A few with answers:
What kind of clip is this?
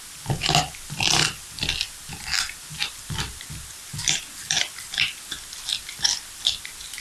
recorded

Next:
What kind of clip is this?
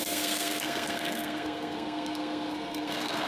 remade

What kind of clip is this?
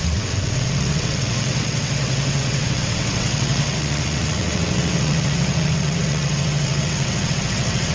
remade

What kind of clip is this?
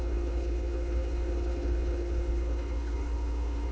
remade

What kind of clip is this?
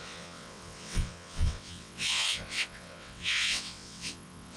remade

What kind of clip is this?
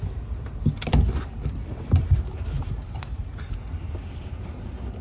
recorded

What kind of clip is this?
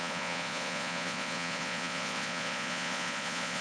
remade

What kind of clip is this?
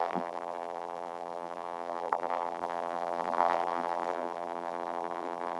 remade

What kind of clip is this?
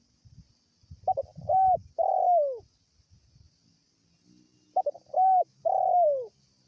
recorded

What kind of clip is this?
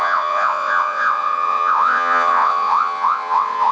remade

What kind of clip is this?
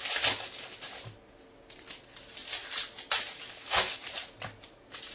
recorded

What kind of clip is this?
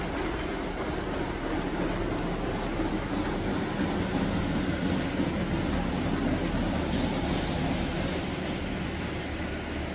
recorded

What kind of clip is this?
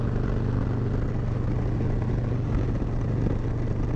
recorded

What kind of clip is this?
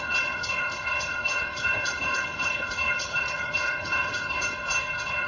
remade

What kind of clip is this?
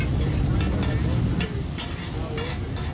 recorded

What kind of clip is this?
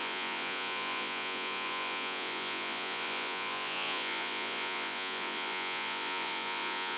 remade